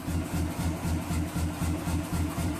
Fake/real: fake